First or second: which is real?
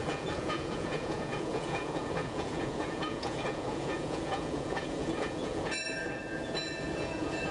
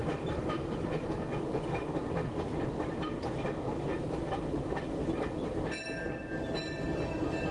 second